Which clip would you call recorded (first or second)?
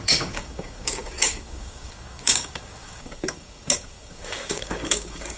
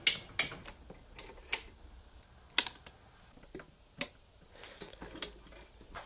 second